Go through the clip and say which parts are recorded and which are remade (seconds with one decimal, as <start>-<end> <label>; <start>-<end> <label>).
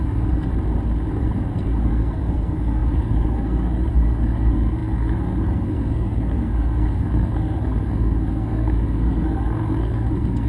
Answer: 0.0-0.5 remade; 0.5-1.1 recorded; 1.1-10.5 remade